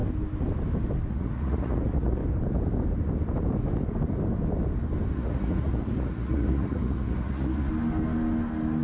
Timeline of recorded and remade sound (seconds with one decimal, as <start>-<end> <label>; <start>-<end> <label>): 0.0-1.1 recorded; 1.1-2.2 remade; 2.2-5.1 recorded; 5.1-7.7 remade; 7.7-8.8 recorded